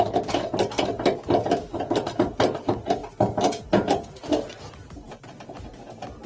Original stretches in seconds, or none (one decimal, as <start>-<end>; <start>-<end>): 0.0-6.3